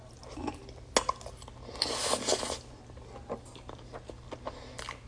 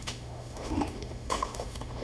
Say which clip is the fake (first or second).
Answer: second